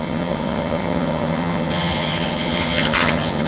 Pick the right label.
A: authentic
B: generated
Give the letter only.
B